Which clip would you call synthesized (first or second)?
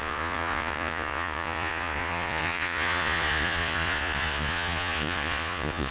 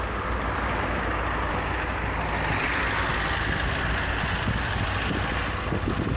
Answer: first